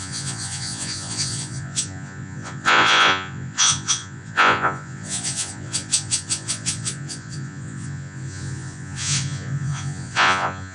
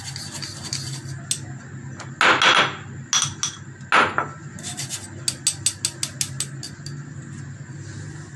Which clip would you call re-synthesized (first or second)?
first